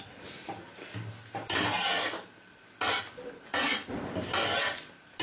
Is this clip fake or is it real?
real